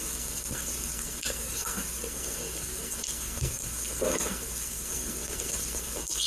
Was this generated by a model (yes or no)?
yes